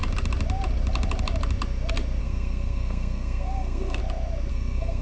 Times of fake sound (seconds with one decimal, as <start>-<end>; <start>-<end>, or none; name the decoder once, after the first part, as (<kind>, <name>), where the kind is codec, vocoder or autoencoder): 2.2-4.0 (codec, SNAC); 4.5-5.0